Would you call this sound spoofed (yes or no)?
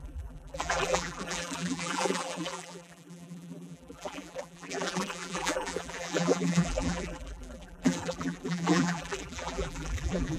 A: yes